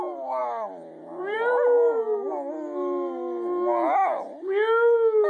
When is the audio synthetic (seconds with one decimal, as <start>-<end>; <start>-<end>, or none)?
0.4-1.5